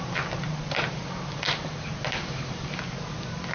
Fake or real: real